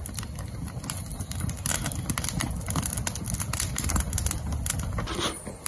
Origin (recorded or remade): recorded